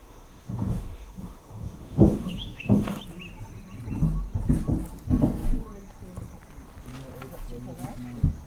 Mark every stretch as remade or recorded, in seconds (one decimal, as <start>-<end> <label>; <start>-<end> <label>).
0.0-3.0 remade; 3.0-8.5 recorded